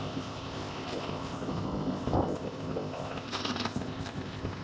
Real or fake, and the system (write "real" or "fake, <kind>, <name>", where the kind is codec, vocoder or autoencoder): fake, codec, ZipCodec